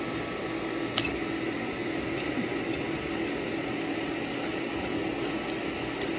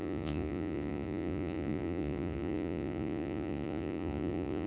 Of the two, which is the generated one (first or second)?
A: second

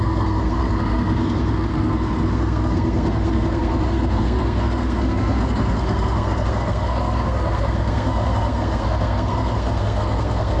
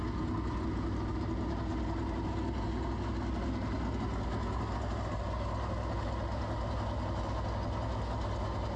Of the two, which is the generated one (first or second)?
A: first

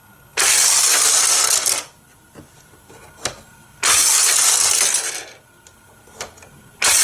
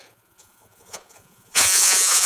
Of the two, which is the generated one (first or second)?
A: second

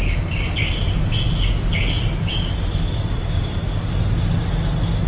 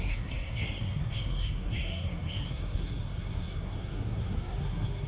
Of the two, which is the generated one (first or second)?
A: second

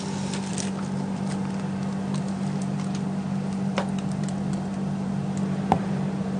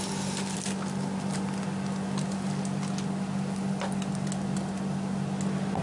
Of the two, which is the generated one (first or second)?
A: first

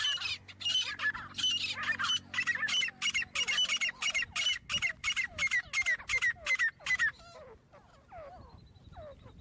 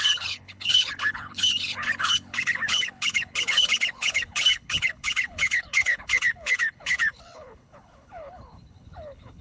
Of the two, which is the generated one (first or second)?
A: second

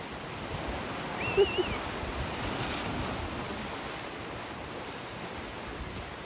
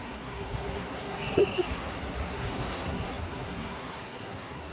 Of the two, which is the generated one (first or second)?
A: second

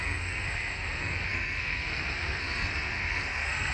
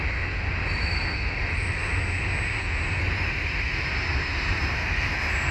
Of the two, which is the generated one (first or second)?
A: first